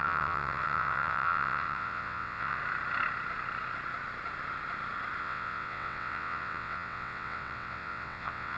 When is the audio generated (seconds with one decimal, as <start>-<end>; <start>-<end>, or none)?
0.0-2.6; 5.2-8.6